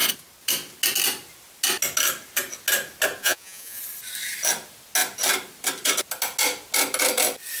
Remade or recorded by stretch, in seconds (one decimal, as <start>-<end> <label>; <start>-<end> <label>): 0.0-3.2 recorded; 3.2-3.8 remade; 3.8-7.6 recorded

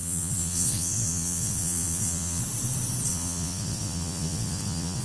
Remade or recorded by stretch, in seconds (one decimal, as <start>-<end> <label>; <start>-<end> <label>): 0.0-2.4 remade; 2.4-3.1 recorded; 3.1-5.0 remade

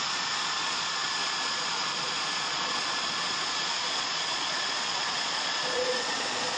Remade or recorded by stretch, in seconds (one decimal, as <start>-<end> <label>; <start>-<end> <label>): 0.0-6.6 remade

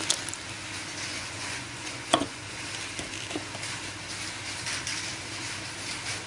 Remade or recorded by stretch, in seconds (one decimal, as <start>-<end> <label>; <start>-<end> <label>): 0.0-1.1 recorded; 1.1-2.6 remade; 2.6-6.3 recorded

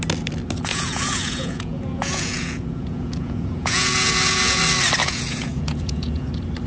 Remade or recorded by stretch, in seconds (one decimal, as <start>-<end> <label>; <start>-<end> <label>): 0.0-0.7 recorded; 0.7-4.6 remade; 4.6-5.0 recorded; 5.0-6.3 remade; 6.3-6.7 recorded